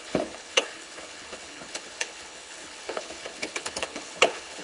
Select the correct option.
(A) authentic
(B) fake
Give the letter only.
B